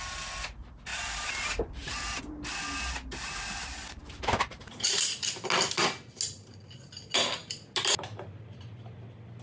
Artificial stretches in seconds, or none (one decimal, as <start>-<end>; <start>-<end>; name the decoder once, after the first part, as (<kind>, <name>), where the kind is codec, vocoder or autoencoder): 0.9-2.2 (vocoder, BigVGAN v2); 4.0-5.0

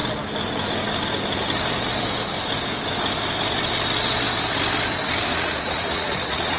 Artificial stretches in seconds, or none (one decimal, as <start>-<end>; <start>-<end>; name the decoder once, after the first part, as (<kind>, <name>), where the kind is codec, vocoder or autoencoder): 5.3-6.6 (vocoder, Vocos)